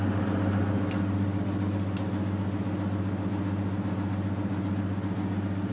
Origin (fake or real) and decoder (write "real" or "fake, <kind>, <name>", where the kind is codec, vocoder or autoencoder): real